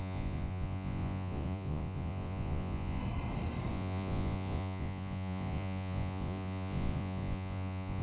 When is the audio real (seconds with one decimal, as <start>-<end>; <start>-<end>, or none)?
3.0-3.7